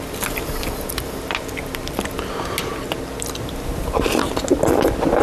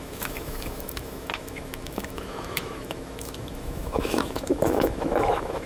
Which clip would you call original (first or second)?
first